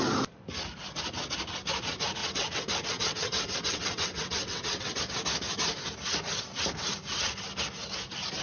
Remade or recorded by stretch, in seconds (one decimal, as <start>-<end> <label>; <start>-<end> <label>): 0.0-2.2 recorded; 2.2-5.0 remade; 5.0-8.4 recorded